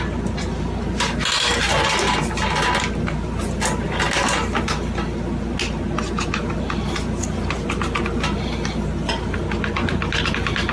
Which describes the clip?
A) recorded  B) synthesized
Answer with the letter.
A